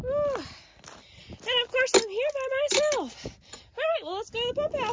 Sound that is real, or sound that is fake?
real